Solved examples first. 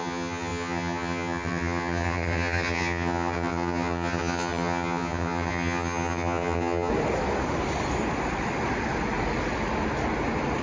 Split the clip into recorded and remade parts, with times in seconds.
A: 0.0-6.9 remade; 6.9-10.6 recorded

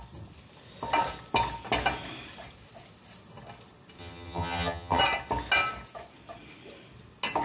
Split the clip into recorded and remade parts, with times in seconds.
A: 0.0-4.0 recorded; 4.0-5.0 remade; 5.0-7.4 recorded